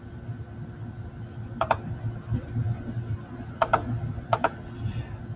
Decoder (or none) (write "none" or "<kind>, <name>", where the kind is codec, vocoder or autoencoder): none